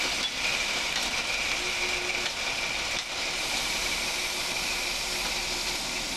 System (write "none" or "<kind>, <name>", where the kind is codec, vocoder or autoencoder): none